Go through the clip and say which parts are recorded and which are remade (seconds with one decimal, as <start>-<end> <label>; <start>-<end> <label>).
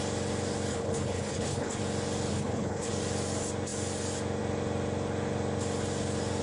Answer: 0.0-0.7 recorded; 0.7-1.8 remade; 1.8-2.3 recorded; 2.3-2.9 remade; 2.9-6.4 recorded